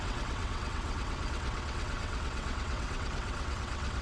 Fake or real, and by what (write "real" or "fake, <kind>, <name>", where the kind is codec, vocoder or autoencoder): fake, vocoder, WaveNeXt